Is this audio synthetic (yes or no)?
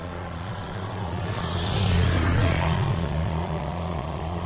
yes